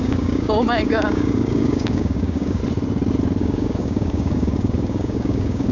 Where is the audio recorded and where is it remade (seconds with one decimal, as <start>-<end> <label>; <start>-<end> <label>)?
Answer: 0.0-2.6 remade; 2.6-3.4 recorded; 3.4-5.7 remade

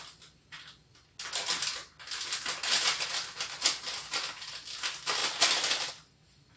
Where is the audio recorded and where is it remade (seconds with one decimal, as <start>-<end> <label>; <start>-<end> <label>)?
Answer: 0.0-6.6 recorded